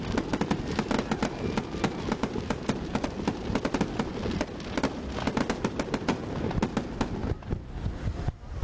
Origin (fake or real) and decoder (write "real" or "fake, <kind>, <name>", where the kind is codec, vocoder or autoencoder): real